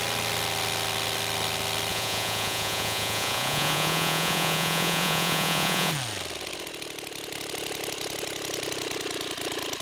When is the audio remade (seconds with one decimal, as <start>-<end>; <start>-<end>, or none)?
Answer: 1.9-5.9